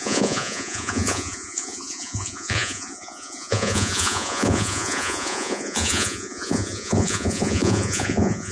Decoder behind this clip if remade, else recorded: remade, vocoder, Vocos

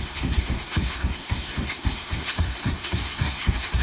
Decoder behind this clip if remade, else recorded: remade, codec, SNAC